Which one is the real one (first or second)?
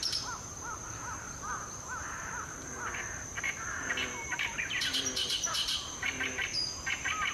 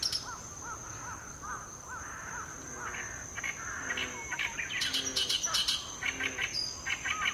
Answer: second